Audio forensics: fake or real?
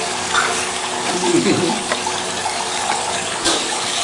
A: fake